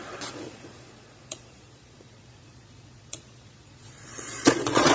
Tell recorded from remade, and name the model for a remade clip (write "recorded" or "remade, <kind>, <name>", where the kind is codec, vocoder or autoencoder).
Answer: remade, vocoder, Vocos